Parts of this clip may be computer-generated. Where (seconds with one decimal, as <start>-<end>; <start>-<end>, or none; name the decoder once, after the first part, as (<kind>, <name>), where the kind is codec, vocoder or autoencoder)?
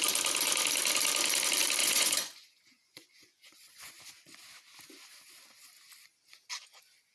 1.8-4.0 (vocoder, Vocos)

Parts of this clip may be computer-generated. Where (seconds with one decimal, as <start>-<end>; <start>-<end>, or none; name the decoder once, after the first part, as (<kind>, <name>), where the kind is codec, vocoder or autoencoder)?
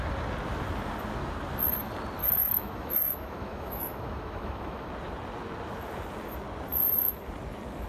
2.2-4.9 (autoencoder, DAC-VAE)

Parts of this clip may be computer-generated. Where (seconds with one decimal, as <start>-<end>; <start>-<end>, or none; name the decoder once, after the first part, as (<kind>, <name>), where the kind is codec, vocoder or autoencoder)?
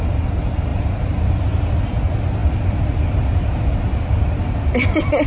0.7-1.2 (vocoder, BigVGAN v2)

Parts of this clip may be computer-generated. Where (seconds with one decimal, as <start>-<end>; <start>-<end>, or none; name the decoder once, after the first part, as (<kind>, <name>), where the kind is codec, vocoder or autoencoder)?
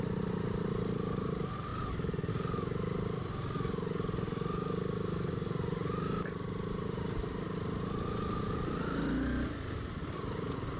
none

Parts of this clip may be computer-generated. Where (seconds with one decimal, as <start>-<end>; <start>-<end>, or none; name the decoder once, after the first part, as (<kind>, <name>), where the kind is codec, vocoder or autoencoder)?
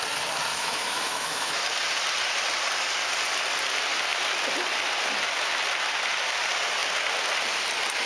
0.5-1.6 (autoencoder, DAC-VAE)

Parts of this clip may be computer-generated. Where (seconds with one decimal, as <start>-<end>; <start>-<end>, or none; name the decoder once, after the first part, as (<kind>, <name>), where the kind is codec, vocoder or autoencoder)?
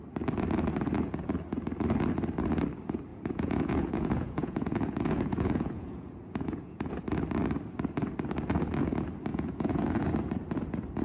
3.1-6.9 (vocoder, Vocos); 9.3-10.1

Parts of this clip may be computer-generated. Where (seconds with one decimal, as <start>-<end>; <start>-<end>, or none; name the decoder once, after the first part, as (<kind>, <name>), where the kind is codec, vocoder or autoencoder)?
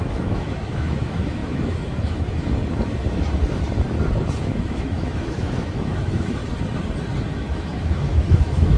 0.0-2.6 (autoencoder, DAC-VAE); 4.4-6.4; 7.3-8.8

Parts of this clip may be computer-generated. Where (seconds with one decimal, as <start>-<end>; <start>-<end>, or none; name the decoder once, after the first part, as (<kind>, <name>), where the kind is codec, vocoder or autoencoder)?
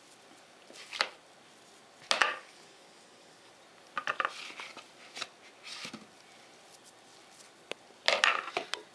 2.2-3.5 (codec, DAC)